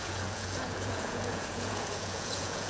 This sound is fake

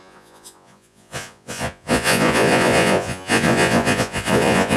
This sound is fake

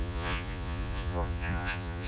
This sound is fake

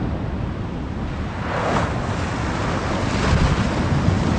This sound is real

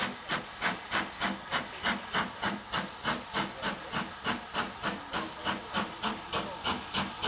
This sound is real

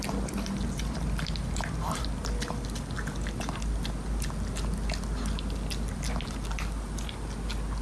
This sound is real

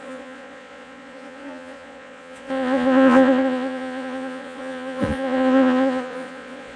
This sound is fake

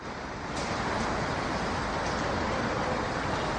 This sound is real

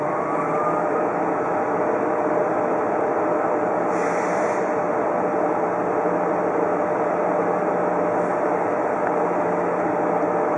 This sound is real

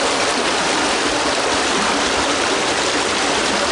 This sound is real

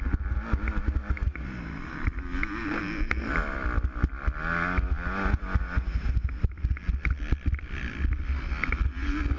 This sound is real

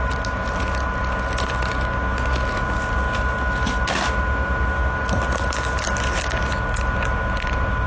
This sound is real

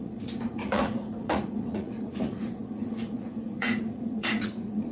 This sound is fake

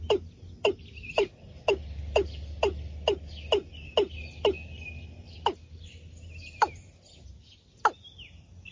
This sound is real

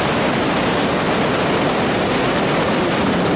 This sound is real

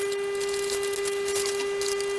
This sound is real